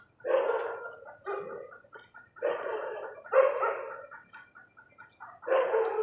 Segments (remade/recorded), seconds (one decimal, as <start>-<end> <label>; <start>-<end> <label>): 0.0-6.0 recorded